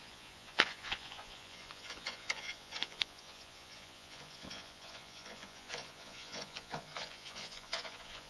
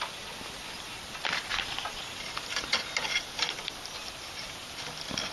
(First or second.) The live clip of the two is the second